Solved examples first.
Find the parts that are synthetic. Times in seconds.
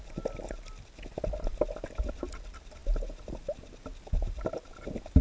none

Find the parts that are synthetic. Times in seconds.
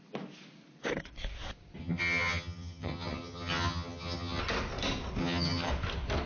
1.8-4.4 (vocoder, HiFi-GAN); 5.2-5.7